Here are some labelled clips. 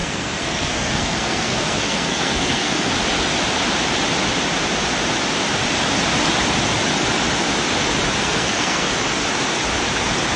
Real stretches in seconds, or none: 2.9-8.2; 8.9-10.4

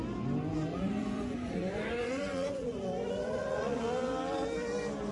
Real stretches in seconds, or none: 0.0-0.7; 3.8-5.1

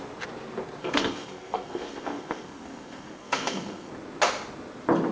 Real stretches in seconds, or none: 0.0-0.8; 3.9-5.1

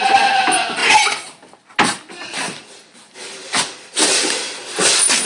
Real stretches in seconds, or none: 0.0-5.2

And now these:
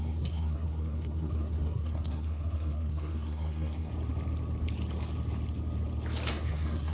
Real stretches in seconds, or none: 3.9-6.3

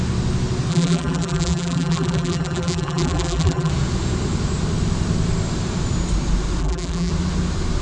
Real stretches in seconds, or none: 0.0-0.7; 3.7-6.6; 7.1-7.8